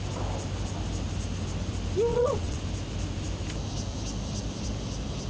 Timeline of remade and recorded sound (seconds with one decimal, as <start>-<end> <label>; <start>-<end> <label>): 0.0-2.1 recorded; 2.1-2.6 remade; 2.6-5.3 recorded